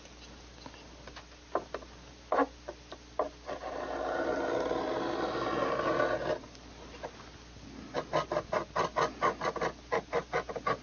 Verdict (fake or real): real